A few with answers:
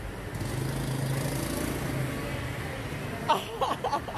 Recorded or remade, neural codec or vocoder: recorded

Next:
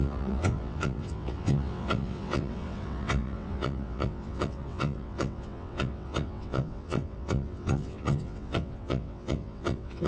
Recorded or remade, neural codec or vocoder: remade, vocoder, WaveNeXt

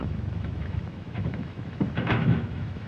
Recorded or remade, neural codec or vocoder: remade, autoencoder, DAC-VAE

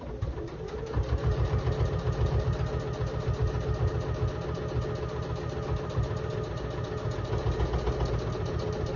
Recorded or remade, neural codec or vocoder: recorded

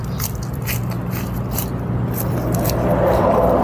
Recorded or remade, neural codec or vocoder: recorded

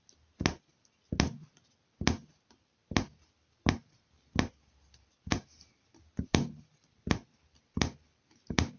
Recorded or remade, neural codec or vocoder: recorded